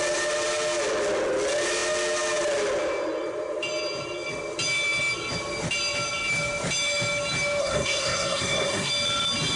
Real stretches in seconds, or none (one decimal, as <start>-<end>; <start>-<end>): 0.0-7.6; 8.9-9.6